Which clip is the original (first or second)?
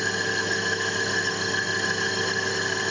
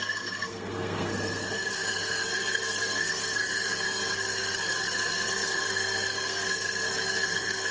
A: first